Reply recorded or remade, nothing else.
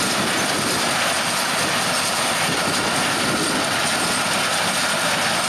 recorded